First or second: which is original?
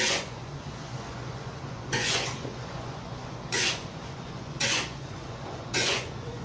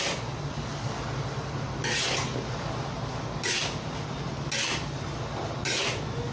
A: second